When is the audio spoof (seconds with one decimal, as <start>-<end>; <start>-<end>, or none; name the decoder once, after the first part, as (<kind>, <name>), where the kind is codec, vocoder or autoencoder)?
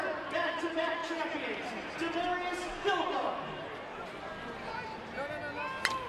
none